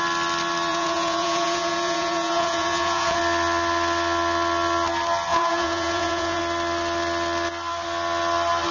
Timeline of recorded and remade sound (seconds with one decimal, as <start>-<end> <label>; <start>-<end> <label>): 0.0-0.7 recorded; 0.7-3.2 remade; 3.2-5.3 recorded; 5.3-6.4 remade; 6.4-8.7 recorded